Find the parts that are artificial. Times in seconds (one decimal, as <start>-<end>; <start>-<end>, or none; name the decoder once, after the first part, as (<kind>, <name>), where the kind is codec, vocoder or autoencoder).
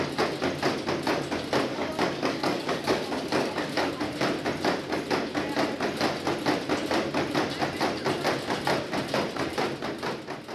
1.7-3.9 (codec, DAC)